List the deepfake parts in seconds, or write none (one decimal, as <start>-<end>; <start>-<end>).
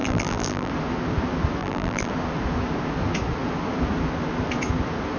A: 0.0-0.7; 1.6-2.1